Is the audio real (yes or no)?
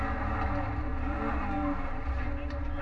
yes